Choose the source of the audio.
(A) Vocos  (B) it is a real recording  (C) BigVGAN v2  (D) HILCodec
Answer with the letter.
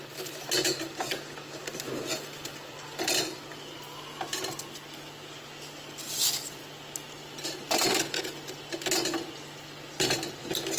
B